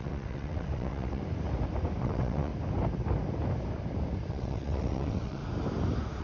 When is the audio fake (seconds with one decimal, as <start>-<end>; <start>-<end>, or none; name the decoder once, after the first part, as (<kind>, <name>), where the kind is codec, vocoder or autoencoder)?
0.0-1.2 (vocoder, WaveNeXt); 2.0-2.5; 4.3-5.4